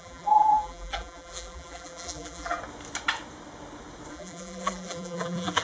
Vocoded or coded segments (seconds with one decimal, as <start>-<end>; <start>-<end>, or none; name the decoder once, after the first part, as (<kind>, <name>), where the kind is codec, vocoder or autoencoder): 0.0-2.6 (vocoder, BigVGAN v2); 4.1-5.6